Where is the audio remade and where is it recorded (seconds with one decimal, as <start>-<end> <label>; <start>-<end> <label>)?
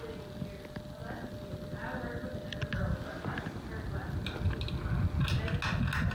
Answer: 0.0-6.1 recorded